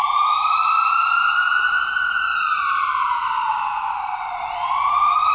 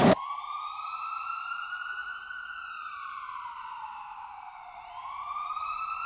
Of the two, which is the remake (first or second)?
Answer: second